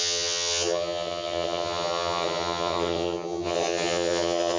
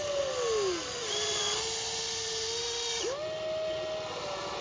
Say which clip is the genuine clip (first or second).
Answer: second